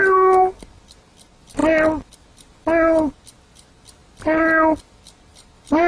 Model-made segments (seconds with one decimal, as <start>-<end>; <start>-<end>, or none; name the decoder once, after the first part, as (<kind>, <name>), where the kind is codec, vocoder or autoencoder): none